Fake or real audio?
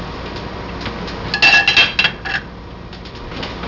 real